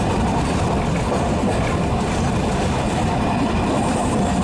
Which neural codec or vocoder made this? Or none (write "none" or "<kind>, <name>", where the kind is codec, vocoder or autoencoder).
none